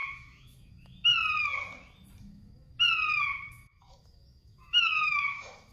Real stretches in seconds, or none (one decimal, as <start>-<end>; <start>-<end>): 1.1-2.2; 2.7-3.2